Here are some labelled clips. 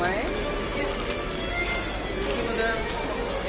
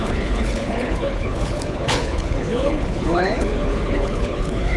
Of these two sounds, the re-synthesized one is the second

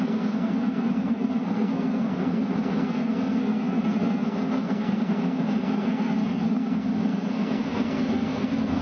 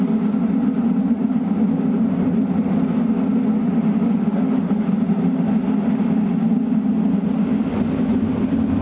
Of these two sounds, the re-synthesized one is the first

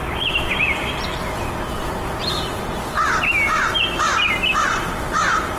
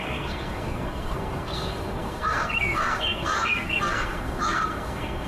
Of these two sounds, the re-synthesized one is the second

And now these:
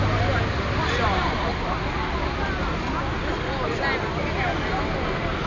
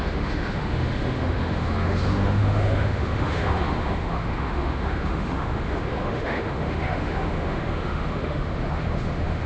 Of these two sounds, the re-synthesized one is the second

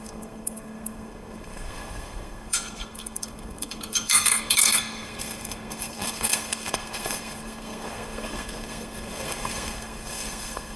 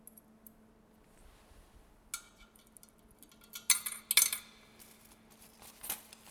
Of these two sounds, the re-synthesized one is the first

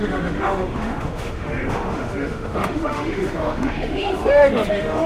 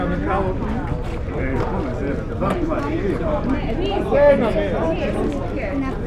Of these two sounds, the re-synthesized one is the first